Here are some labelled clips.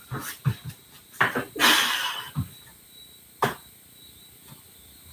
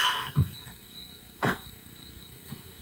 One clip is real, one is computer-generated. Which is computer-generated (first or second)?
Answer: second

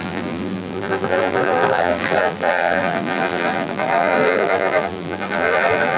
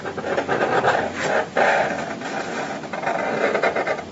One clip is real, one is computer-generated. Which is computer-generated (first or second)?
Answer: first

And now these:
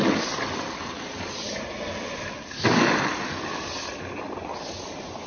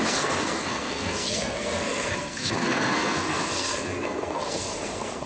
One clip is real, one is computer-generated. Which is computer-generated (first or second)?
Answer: second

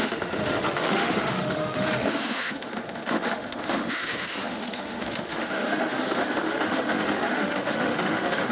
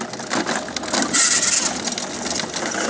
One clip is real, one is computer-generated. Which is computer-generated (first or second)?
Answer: first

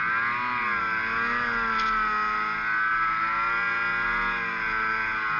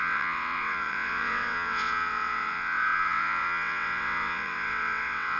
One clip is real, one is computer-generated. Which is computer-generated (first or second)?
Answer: second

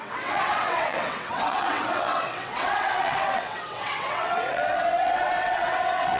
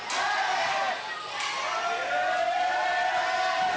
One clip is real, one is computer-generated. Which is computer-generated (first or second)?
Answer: first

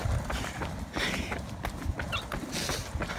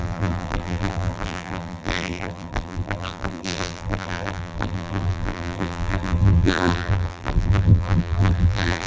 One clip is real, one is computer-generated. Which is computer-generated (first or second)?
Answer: second